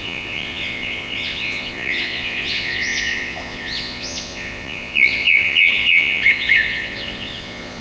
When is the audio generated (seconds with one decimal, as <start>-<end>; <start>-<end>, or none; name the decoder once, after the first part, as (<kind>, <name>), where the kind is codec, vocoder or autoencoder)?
0.0-7.8 (vocoder, Vocos)